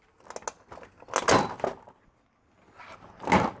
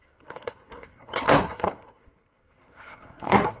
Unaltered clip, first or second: first